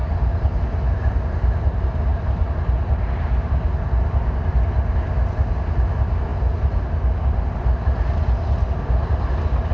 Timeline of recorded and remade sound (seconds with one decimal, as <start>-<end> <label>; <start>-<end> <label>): 0.0-9.7 recorded